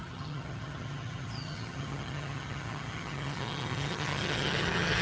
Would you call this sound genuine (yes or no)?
no